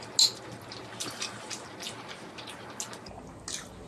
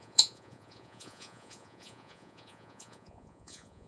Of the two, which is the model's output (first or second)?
second